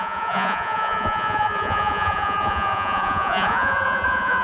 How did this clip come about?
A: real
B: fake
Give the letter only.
B